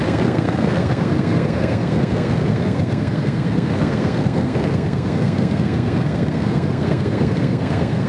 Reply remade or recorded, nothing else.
remade